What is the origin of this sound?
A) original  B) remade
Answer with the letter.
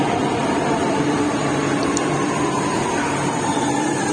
B